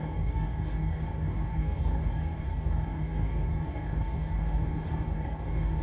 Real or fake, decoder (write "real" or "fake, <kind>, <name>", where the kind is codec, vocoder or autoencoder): fake, codec, DAC